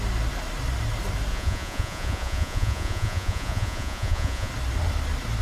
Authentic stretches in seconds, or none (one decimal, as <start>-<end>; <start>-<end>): 0.0-1.3; 4.5-5.4